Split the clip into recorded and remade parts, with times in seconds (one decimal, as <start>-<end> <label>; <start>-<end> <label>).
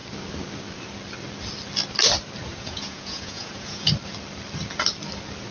0.0-2.5 recorded; 2.5-3.9 remade; 3.9-5.5 recorded